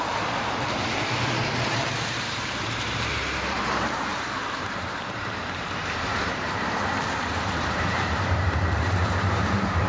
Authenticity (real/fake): fake